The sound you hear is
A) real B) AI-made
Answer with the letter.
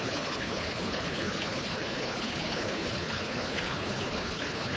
B